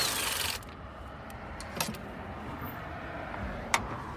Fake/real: real